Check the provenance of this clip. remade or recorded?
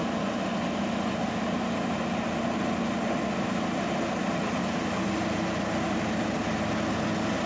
recorded